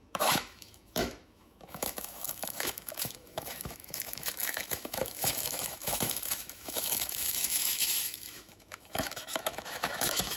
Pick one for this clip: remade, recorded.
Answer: remade